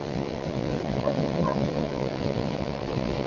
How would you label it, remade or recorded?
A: remade